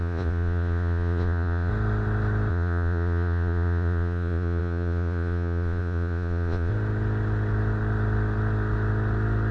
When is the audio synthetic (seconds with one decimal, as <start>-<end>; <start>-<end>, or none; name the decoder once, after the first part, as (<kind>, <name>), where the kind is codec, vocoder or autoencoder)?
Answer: 0.0-1.7 (vocoder, Vocos); 2.5-6.7